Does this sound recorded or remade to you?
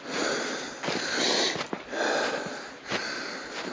recorded